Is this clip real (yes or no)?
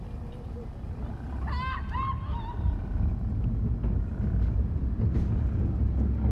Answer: yes